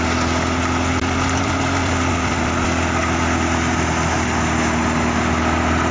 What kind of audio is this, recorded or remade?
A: recorded